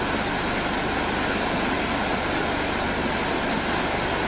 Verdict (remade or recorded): recorded